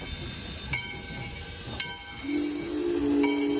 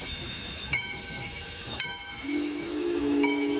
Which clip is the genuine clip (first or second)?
first